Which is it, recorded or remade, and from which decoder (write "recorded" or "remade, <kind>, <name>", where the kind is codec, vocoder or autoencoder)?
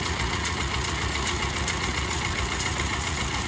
remade, vocoder, Vocos